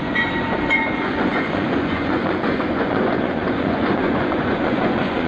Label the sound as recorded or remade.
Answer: remade